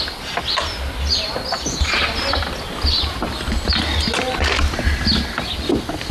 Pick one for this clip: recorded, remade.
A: recorded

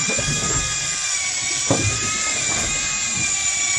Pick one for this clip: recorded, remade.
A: remade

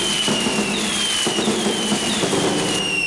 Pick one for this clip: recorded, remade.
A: remade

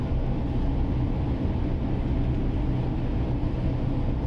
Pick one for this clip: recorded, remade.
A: recorded